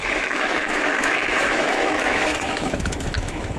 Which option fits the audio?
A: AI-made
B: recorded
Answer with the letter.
A